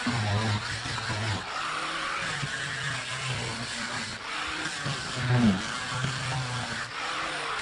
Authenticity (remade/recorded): recorded